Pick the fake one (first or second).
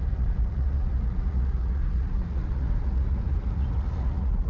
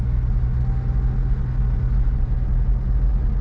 first